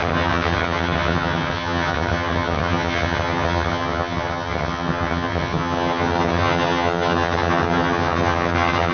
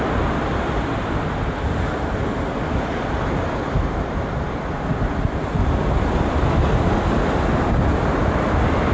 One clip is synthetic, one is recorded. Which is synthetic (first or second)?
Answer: first